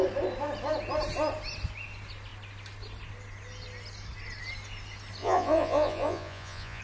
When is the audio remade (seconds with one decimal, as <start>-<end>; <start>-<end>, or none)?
5.2-6.8